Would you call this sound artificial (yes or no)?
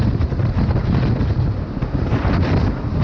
no